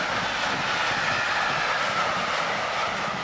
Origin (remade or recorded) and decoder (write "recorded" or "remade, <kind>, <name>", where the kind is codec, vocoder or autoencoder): recorded